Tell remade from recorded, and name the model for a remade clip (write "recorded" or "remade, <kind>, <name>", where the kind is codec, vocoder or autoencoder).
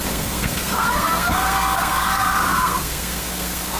remade, codec, SNAC